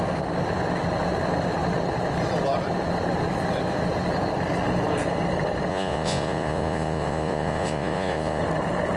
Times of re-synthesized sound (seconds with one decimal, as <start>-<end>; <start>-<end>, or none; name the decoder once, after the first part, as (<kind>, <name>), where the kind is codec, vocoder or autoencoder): 5.7-8.4 (vocoder, Vocos)